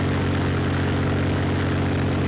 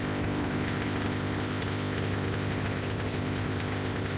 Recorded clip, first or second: first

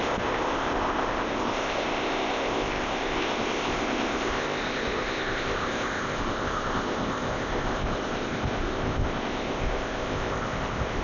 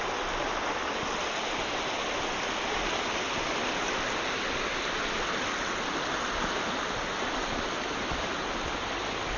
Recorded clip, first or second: second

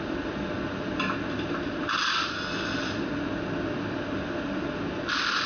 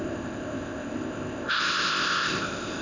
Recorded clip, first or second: first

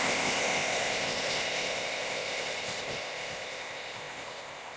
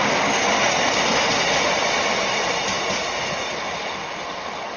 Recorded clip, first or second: second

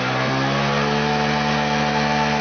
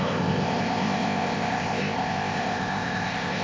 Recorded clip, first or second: first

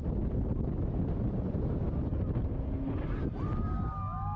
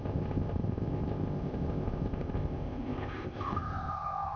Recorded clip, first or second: first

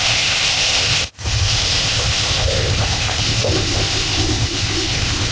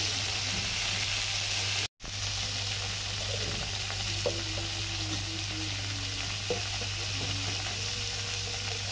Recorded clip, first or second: second